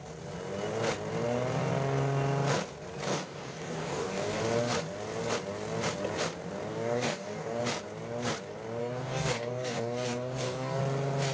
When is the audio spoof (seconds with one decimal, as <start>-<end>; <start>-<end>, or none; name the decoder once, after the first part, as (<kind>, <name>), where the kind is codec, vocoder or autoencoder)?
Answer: 3.1-4.4 (codec, DAC); 6.7-7.6; 8.8-10.8